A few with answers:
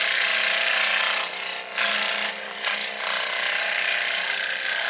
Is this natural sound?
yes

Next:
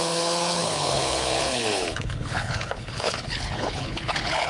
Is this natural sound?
no